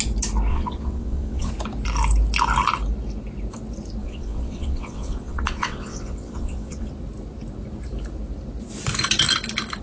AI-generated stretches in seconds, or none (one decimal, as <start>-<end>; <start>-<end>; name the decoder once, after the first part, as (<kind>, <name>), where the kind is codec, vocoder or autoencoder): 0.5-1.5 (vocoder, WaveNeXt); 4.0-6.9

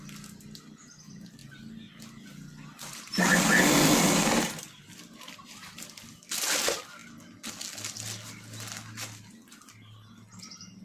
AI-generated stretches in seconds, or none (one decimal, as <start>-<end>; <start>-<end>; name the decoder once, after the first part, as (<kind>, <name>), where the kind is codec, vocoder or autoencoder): none

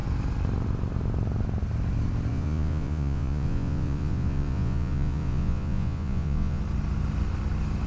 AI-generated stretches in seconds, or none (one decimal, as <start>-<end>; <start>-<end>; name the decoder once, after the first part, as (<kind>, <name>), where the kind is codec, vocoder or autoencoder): 2.3-6.6 (vocoder, Vocos)